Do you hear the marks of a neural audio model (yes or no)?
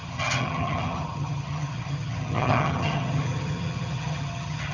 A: yes